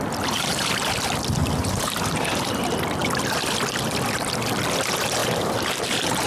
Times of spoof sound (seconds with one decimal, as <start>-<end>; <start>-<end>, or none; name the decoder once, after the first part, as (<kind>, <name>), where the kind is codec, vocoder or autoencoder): 1.4-2.6 (vocoder, BigVGAN v2); 5.2-6.3